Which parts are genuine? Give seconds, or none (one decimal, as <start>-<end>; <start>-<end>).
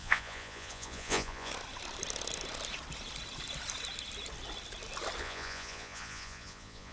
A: 1.5-5.2